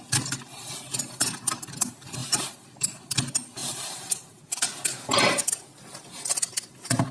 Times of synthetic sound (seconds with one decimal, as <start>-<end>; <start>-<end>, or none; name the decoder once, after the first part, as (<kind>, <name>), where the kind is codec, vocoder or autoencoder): none